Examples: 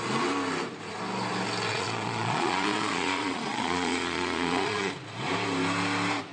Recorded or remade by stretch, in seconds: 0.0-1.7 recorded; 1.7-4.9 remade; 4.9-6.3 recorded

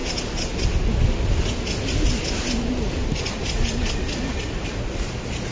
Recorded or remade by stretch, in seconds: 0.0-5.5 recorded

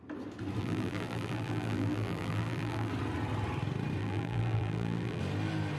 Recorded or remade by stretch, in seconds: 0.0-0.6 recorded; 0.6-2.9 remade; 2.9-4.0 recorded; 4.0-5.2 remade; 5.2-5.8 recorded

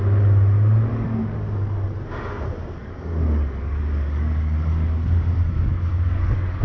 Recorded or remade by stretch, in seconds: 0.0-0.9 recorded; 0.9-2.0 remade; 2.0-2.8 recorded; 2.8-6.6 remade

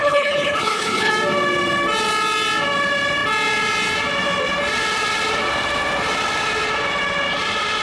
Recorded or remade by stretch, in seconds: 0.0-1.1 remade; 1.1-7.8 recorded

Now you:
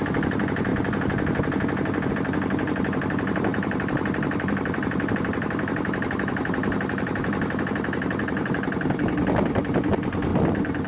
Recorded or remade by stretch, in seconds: 0.0-0.7 remade; 0.7-2.1 recorded; 2.1-6.6 remade; 6.6-7.6 recorded; 7.6-10.3 remade; 10.3-10.9 recorded

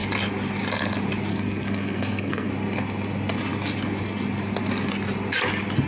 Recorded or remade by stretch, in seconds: 0.0-1.3 recorded; 1.3-2.5 remade; 2.5-5.9 recorded